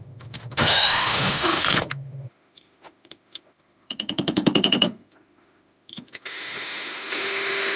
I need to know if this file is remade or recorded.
remade